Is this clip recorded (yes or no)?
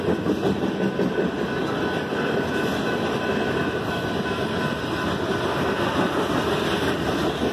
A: yes